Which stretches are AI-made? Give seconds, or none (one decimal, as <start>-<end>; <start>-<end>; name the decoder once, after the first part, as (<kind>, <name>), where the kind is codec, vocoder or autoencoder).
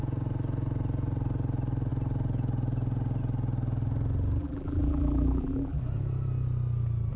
4.4-5.8 (vocoder, BigVGAN v2)